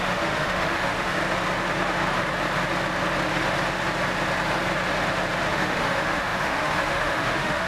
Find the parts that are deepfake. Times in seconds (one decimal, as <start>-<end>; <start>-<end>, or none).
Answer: 0.0-1.2; 5.5-7.7